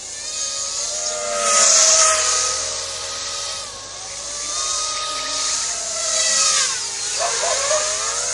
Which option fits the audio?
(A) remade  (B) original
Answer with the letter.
B